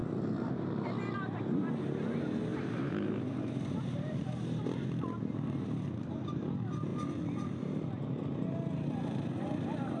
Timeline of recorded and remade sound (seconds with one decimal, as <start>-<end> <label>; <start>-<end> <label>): 0.0-10.0 remade